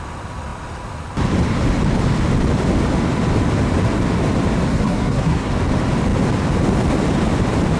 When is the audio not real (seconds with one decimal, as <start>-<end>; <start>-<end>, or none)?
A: 4.7-5.5